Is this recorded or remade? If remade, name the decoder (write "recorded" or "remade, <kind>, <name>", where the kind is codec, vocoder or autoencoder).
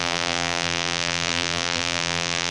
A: remade, vocoder, BigVGAN v2